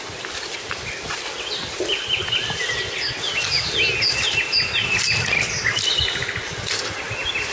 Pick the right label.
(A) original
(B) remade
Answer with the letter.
A